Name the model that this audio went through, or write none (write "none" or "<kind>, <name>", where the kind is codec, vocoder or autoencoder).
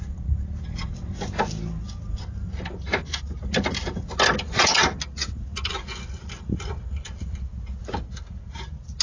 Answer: none